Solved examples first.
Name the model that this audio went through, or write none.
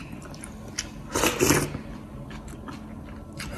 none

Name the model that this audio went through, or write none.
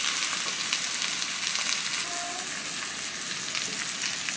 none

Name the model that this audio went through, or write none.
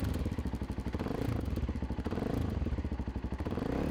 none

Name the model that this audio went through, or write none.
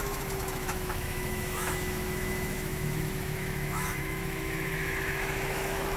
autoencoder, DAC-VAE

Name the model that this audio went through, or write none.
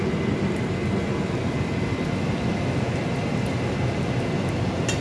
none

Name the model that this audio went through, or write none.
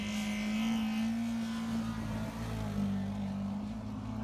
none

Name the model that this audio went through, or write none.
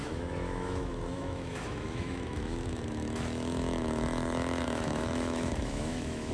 autoencoder, DAC-VAE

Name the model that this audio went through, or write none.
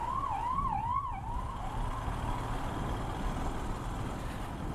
none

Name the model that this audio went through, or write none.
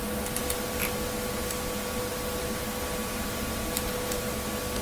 none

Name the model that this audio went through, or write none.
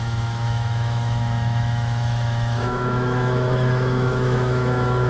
autoencoder, DAC-VAE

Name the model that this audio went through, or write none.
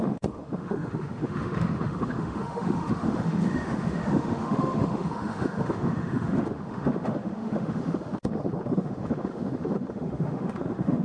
autoencoder, DAC-VAE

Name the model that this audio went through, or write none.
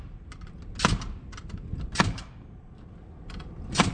none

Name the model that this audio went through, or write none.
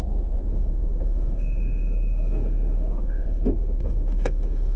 autoencoder, DAC-VAE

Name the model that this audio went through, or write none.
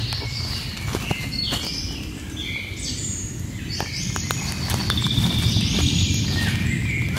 none